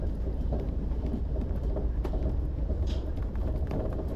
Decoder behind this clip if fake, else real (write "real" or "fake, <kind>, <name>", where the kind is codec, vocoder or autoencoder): fake, vocoder, BigVGAN v2